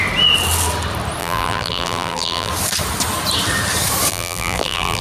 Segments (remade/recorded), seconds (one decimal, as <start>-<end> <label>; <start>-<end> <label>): 0.0-1.2 recorded; 1.2-2.5 remade; 2.5-4.1 recorded; 4.1-5.0 remade